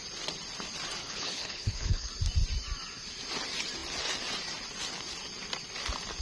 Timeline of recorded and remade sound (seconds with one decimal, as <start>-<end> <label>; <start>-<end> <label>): 0.0-1.0 recorded; 1.0-2.1 remade; 2.1-6.2 recorded